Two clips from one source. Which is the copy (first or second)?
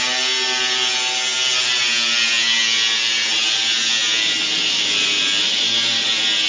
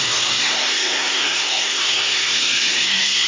second